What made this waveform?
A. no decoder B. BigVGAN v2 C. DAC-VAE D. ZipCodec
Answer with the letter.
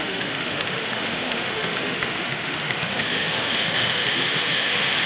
C